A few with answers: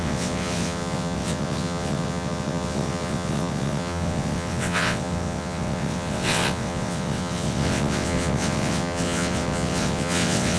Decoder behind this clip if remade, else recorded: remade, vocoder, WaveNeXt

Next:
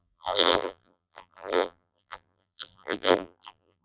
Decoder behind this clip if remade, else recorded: remade, vocoder, BigVGAN v2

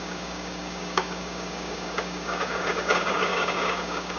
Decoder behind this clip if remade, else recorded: remade, codec, DAC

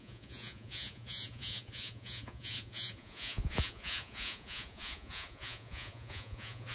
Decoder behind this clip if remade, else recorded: remade, vocoder, Vocos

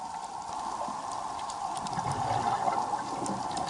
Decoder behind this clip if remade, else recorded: recorded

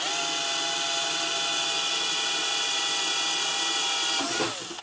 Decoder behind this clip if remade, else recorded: recorded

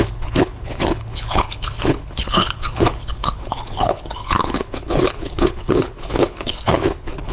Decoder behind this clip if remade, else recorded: remade, codec, HILCodec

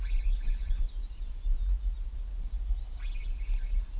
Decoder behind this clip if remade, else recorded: recorded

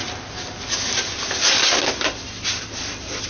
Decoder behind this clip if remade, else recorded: recorded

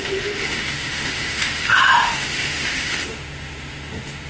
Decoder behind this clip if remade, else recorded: remade, autoencoder, DAC-VAE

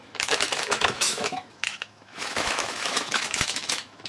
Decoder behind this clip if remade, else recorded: remade, autoencoder, DAC-VAE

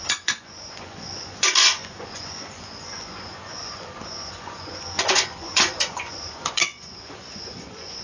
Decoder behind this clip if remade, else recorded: remade, vocoder, Vocos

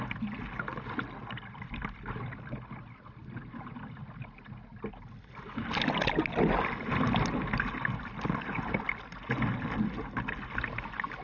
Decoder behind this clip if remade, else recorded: recorded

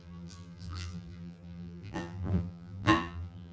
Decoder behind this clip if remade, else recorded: remade, vocoder, BigVGAN v2